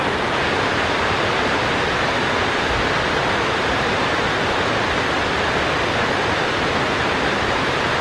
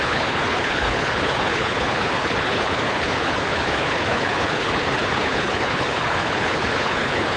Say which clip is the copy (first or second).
second